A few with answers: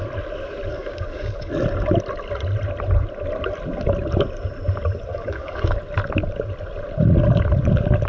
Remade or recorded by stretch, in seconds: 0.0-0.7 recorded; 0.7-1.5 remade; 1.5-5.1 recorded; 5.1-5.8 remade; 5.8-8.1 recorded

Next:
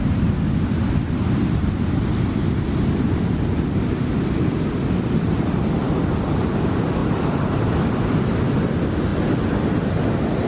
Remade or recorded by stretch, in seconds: 0.0-10.5 recorded

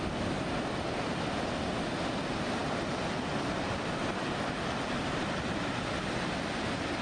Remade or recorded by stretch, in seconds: 0.0-7.0 recorded